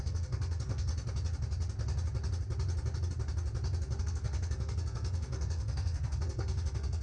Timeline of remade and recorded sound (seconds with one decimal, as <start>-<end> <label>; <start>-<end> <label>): 0.0-0.9 remade; 0.9-4.0 recorded; 4.0-7.0 remade